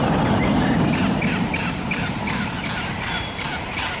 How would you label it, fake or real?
real